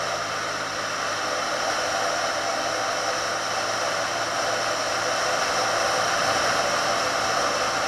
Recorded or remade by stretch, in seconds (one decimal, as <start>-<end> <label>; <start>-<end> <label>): 0.0-7.9 recorded